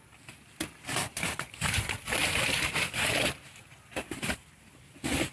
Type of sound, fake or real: real